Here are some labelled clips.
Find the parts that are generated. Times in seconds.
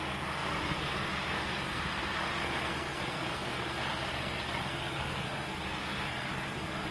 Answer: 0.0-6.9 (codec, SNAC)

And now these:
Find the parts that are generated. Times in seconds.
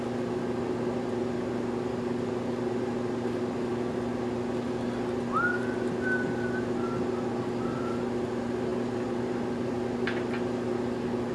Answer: none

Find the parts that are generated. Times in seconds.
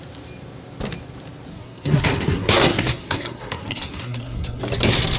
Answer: 1.5-4.6 (codec, SNAC)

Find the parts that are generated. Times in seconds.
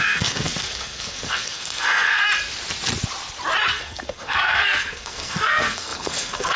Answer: 0.0-2.2 (codec, SNAC); 3.7-6.6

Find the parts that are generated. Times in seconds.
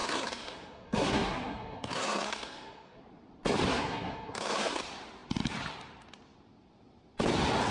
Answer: 0.0-3.0 (codec, SNAC); 3.7-4.8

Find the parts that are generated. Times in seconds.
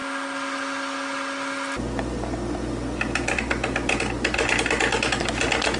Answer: none